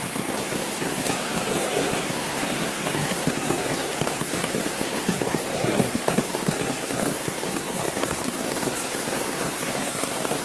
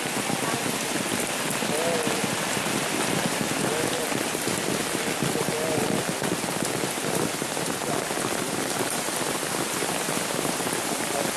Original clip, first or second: second